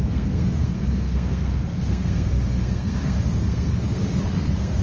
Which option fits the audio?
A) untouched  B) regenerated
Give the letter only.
B